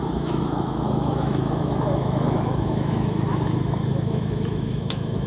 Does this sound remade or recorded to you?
remade